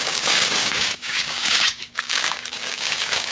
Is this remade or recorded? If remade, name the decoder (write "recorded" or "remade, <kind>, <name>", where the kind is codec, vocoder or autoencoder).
remade, codec, DAC